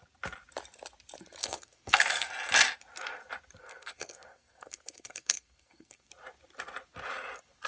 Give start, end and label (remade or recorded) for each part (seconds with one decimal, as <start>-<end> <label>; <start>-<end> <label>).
0.0-1.4 recorded; 1.4-2.3 remade; 2.3-3.6 recorded; 3.6-6.1 remade; 6.1-7.7 recorded